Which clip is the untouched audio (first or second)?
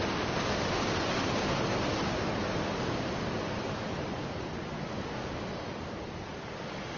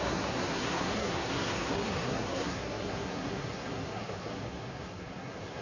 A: first